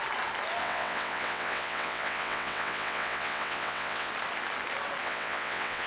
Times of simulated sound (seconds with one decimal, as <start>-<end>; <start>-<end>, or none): 0.6-4.1; 5.0-5.9